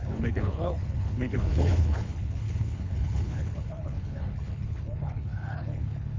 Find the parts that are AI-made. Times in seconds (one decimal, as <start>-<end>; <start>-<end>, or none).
0.0-6.2